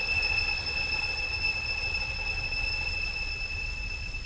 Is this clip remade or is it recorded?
remade